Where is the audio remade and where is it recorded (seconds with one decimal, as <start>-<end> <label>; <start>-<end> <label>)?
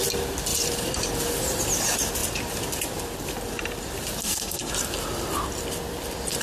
0.0-4.2 recorded; 4.2-4.7 remade; 4.7-6.4 recorded